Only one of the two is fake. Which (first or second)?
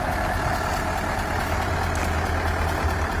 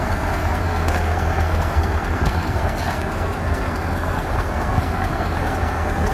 second